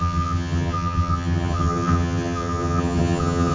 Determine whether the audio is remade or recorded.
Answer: remade